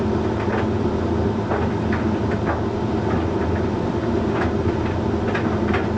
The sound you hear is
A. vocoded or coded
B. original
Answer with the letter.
B